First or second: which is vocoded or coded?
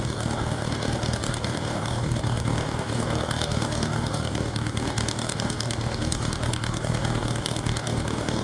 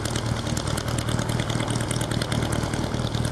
first